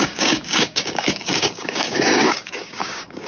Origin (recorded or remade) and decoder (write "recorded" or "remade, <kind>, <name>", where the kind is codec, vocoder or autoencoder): remade, codec, DAC